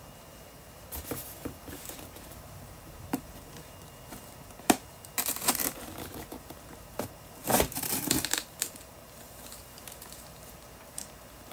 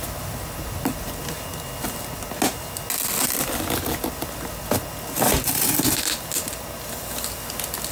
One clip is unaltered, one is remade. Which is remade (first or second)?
first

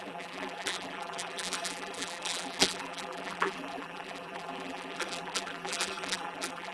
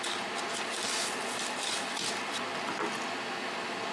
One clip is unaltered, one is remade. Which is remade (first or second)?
first